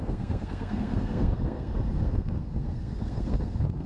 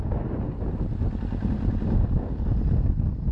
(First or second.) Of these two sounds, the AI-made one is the first